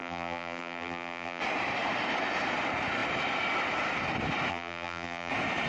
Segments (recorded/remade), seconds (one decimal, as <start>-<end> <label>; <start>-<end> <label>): 0.0-1.4 remade; 1.4-4.5 recorded; 4.5-5.3 remade; 5.3-5.7 recorded